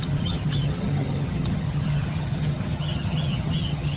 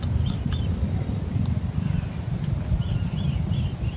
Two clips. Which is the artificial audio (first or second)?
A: first